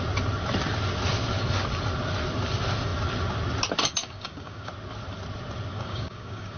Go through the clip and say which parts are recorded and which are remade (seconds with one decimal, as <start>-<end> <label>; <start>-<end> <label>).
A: 0.0-4.0 recorded; 4.0-4.7 remade; 4.7-5.7 recorded; 5.7-6.6 remade